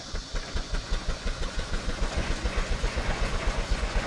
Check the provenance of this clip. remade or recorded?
remade